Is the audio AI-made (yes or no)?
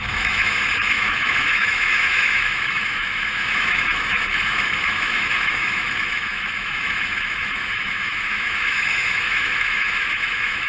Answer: yes